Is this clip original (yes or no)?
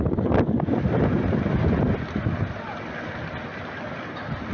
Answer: yes